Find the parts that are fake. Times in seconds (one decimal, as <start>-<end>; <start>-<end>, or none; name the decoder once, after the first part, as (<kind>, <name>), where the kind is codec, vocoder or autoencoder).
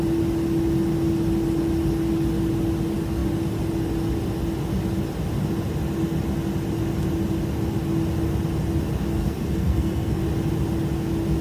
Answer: 9.2-10.2 (codec, SNAC)